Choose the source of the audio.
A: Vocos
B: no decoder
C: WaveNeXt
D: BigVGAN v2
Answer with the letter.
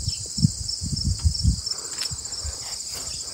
D